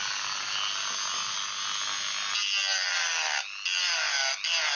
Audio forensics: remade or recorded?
recorded